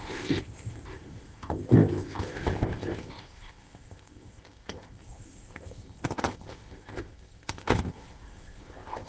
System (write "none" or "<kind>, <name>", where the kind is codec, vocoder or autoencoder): codec, ZipCodec